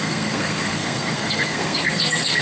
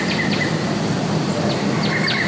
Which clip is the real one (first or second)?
second